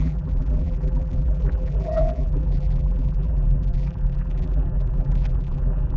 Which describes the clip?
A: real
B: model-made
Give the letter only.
B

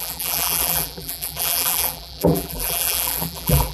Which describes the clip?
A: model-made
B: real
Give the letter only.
A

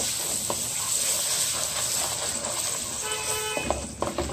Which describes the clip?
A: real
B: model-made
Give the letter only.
A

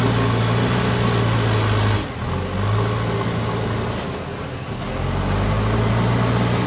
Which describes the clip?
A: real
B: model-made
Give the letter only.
A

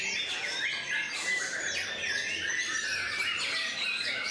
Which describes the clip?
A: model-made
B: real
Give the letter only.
A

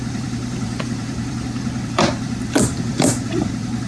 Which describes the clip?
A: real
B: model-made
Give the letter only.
B